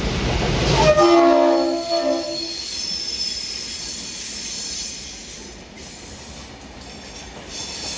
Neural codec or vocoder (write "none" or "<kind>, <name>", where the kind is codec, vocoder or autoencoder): none